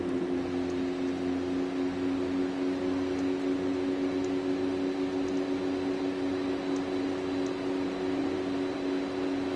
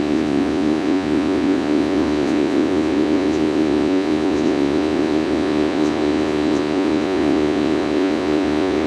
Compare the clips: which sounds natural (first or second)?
first